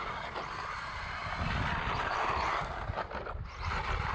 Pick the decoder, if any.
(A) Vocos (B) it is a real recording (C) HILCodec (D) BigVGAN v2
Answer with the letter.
B